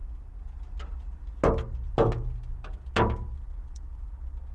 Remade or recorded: recorded